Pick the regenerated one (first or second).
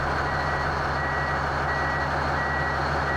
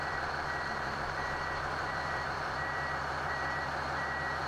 second